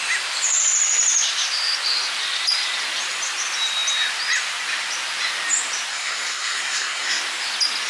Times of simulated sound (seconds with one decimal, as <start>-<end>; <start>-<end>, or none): 5.9-7.2